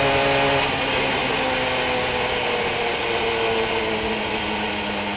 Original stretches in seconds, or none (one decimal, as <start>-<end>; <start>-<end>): 0.0-5.2